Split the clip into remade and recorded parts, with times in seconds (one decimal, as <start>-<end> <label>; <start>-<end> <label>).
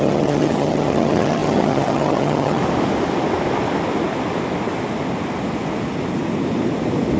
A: 0.0-2.6 remade; 2.6-7.2 recorded